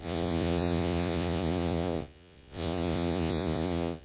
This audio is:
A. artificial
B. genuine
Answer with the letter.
A